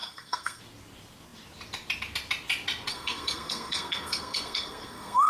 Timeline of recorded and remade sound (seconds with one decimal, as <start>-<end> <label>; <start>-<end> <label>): 0.0-0.6 remade; 0.6-2.9 recorded; 2.9-5.3 remade